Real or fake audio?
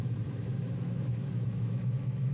fake